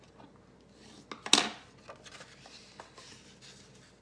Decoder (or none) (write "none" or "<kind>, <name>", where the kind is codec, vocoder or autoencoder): none